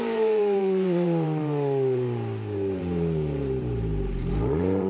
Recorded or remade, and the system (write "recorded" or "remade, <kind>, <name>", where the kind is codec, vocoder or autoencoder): remade, vocoder, BigVGAN v2